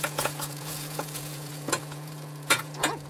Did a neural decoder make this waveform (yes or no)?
yes